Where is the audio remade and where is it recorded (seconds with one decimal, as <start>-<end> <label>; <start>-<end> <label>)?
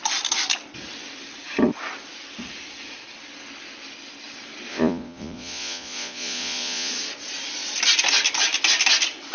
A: 0.0-4.7 recorded; 4.7-6.9 remade; 6.9-9.3 recorded